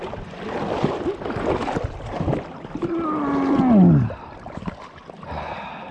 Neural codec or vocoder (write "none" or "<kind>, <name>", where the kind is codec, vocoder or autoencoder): none